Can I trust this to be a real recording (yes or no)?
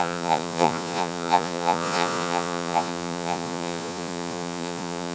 no